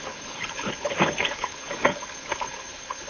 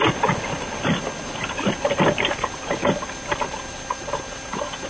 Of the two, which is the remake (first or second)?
first